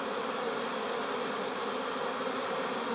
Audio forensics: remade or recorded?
recorded